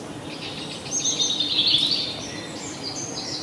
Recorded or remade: recorded